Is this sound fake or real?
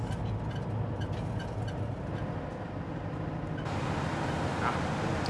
real